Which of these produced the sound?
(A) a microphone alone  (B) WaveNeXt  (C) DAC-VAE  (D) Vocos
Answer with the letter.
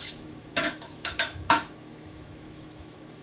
C